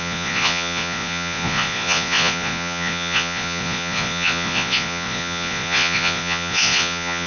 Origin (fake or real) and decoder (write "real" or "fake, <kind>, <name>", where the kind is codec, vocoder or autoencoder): fake, vocoder, Vocos